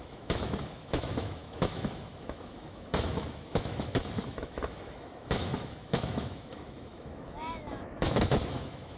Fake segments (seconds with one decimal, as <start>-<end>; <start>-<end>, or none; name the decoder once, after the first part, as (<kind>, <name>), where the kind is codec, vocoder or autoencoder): 0.0-9.0 (autoencoder, DAC-VAE)